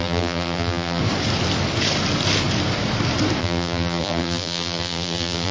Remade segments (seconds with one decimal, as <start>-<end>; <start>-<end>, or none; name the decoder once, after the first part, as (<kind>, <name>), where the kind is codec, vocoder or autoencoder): 0.0-1.0 (vocoder, BigVGAN v2); 3.4-5.5